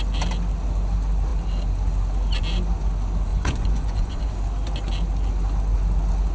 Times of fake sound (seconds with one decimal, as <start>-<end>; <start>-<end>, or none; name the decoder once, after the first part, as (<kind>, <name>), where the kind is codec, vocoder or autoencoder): 3.3-4.3 (vocoder, Vocos)